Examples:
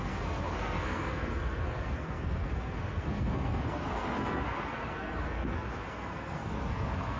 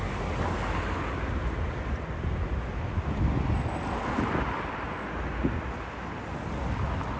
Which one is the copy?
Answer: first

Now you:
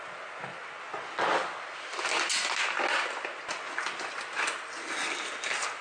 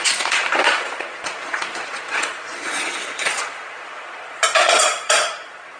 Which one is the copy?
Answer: second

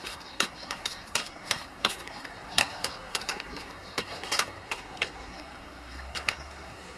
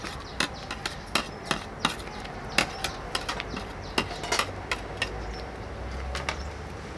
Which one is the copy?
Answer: first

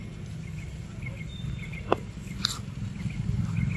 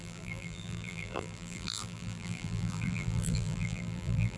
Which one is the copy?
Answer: second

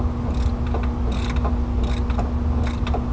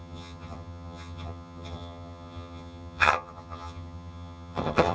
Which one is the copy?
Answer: second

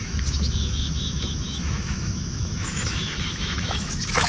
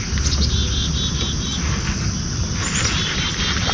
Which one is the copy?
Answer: first